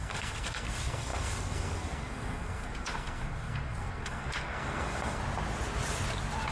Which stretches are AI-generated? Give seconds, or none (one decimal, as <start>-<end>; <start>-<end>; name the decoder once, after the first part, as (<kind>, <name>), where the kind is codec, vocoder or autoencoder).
0.0-5.2 (codec, SNAC)